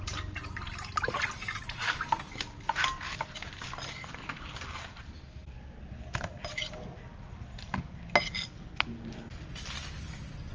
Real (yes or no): yes